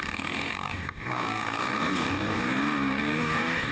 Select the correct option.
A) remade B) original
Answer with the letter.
A